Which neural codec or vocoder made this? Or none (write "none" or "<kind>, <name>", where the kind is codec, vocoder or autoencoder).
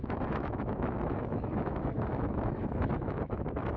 autoencoder, DAC-VAE